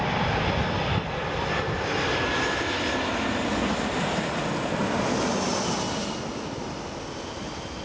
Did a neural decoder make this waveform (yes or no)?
no